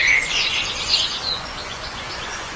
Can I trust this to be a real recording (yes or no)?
no